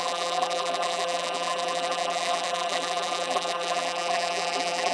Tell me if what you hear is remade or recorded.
remade